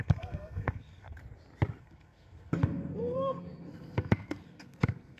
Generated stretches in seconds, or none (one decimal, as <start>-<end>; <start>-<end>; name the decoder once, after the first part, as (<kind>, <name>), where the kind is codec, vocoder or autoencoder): 0.0-1.2 (codec, SNAC); 1.8-5.2